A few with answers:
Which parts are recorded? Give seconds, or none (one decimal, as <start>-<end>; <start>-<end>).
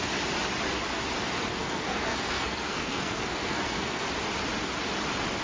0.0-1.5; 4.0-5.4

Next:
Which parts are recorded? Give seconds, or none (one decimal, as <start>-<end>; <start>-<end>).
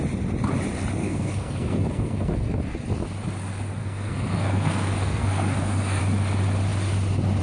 0.0-1.0; 2.6-3.8; 6.0-7.4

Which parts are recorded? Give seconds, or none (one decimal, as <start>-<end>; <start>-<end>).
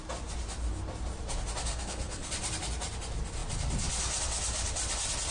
0.0-1.7; 2.3-5.3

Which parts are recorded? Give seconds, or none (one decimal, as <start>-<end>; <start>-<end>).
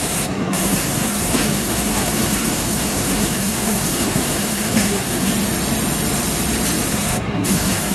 5.3-6.9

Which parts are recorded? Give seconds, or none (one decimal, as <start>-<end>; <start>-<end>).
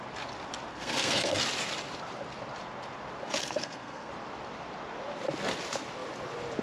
0.0-0.7; 1.4-3.4; 4.1-6.6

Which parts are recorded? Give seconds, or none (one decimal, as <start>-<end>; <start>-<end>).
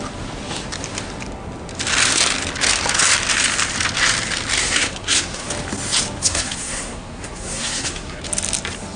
0.0-4.6; 5.5-6.2; 8.2-9.0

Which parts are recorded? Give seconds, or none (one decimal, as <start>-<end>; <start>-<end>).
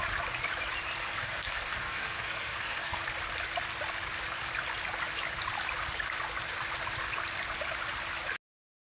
0.0-1.0; 3.0-8.9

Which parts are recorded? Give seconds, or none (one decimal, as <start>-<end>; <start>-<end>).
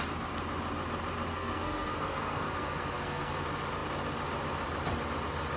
0.0-1.3; 3.4-5.6